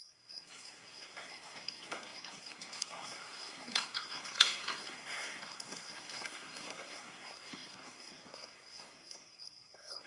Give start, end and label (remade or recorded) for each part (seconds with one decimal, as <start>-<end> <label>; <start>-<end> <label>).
0.0-10.1 remade

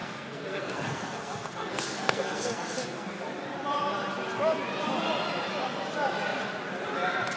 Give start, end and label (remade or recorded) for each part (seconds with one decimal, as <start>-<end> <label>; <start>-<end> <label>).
0.0-3.2 remade; 3.2-7.4 recorded

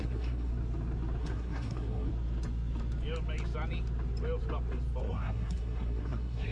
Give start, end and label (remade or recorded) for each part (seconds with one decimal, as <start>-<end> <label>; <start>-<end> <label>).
0.0-0.5 remade; 0.5-1.2 recorded; 1.2-2.1 remade; 2.1-5.0 recorded; 5.0-6.5 remade

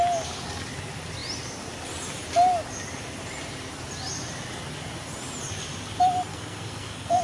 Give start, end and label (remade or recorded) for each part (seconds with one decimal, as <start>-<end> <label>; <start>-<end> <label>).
0.0-6.3 recorded; 6.3-7.2 remade

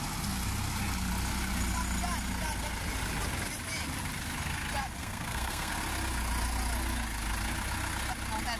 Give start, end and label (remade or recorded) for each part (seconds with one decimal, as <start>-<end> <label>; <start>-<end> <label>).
0.0-5.0 recorded; 5.0-5.7 remade; 5.7-8.6 recorded

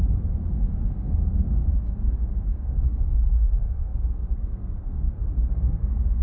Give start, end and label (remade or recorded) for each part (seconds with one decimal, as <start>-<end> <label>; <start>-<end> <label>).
0.0-0.4 recorded; 0.4-2.0 remade; 2.0-2.5 recorded; 2.5-6.2 remade